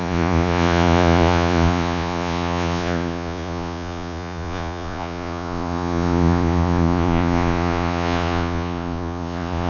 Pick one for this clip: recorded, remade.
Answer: remade